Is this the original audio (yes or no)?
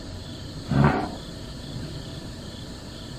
yes